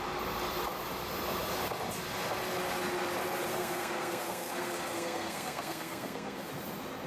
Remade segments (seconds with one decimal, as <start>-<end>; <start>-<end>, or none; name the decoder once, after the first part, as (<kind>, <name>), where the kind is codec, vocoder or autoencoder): 3.5-6.5 (codec, SNAC)